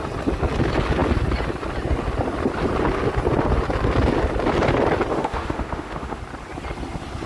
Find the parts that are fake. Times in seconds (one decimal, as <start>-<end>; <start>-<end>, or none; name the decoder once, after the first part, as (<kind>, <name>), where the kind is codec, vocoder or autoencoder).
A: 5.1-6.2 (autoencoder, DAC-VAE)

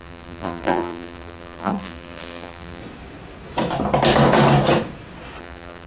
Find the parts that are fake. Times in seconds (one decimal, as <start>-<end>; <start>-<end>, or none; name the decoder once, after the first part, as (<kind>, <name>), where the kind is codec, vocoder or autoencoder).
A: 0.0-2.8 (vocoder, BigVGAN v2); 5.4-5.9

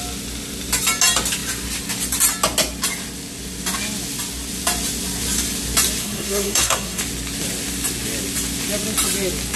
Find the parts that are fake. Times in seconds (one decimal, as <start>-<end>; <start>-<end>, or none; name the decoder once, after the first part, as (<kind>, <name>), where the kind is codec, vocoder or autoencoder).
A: 6.0-7.0 (codec, SNAC)